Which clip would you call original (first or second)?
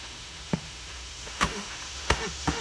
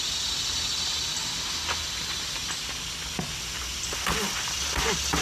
second